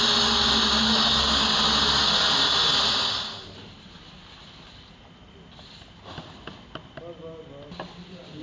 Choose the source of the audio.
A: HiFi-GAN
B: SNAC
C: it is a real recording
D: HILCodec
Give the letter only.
C